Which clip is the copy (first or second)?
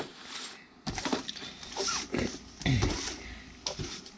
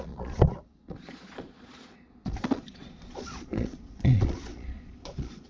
second